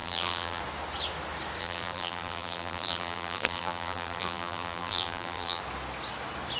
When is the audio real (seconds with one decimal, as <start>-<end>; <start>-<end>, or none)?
0.6-1.6; 5.6-6.6